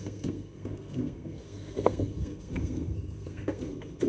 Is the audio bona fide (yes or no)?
no